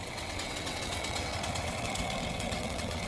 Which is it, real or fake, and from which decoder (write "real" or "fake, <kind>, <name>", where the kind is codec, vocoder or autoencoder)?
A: fake, vocoder, WaveNeXt